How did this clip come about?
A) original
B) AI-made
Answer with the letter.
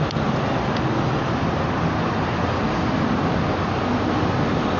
A